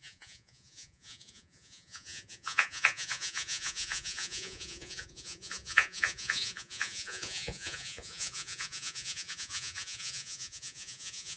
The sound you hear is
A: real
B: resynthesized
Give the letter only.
B